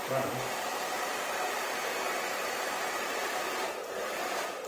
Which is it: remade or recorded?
recorded